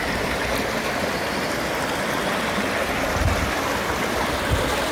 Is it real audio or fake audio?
real